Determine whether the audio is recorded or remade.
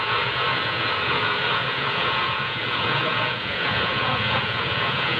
remade